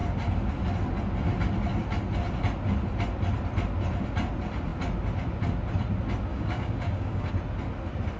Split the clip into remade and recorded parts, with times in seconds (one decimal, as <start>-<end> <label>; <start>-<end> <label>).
0.0-6.3 recorded; 6.3-7.3 remade; 7.3-8.2 recorded